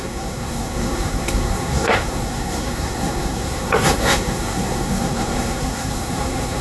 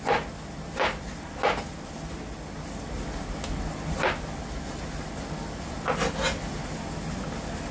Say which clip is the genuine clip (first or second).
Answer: second